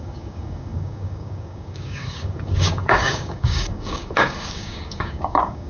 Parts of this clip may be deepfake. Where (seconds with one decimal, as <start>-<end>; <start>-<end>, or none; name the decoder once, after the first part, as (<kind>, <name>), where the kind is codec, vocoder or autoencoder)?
0.0-5.7 (codec, DAC)